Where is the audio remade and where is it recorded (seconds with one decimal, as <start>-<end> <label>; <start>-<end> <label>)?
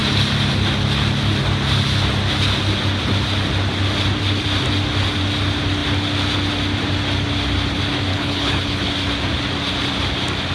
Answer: 0.0-8.1 recorded; 8.1-8.8 remade; 8.8-10.5 recorded